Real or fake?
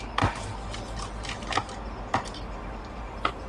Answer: real